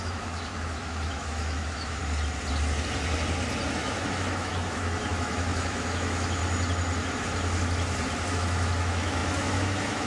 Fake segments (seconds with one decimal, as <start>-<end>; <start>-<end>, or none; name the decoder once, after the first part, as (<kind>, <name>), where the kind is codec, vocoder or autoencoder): 0.0-2.0 (autoencoder, DAC-VAE); 3.7-6.4; 8.3-10.1